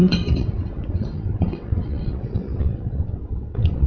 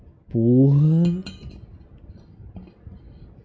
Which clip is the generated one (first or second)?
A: first